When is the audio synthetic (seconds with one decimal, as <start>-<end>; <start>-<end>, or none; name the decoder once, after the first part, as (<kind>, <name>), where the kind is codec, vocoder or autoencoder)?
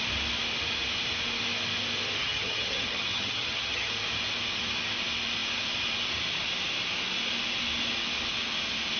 2.2-3.9 (vocoder, HiFi-GAN)